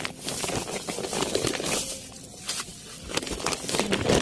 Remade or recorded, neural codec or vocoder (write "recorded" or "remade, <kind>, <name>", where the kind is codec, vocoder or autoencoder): recorded